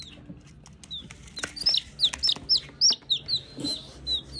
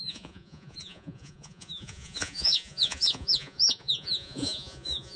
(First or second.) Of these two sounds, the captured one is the first